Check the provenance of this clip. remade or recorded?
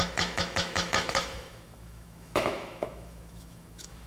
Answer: remade